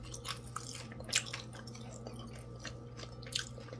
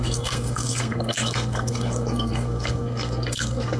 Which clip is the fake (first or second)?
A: second